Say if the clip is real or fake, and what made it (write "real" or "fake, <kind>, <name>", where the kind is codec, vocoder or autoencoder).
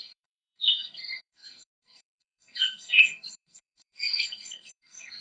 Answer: fake, codec, SNAC